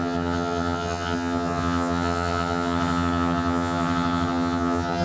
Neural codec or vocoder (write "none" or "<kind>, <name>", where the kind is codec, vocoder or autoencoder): vocoder, HiFi-GAN